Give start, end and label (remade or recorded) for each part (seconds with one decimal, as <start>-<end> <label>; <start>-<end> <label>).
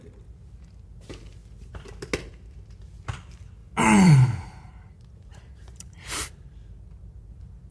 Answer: 0.0-3.6 recorded; 3.6-4.7 remade; 4.7-5.3 recorded; 5.3-6.5 remade; 6.5-7.7 recorded